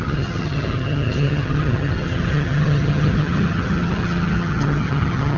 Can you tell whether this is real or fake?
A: fake